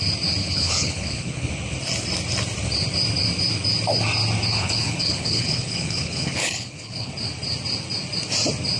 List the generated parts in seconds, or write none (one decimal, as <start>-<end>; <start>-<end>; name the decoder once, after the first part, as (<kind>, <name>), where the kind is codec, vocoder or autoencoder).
0.4-1.5 (codec, HILCodec); 4.5-7.1